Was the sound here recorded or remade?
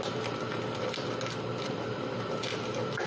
recorded